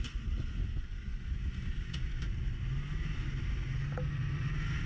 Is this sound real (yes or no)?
yes